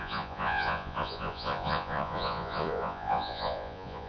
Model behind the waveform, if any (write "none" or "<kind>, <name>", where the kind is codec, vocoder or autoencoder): vocoder, Vocos